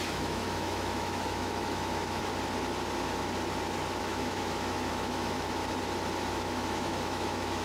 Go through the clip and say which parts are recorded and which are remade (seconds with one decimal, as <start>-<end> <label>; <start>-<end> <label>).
0.0-2.3 remade; 2.3-4.0 recorded; 4.0-5.6 remade; 5.6-6.3 recorded; 6.3-7.6 remade